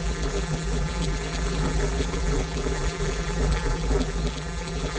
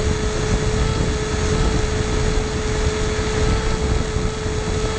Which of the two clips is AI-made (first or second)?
first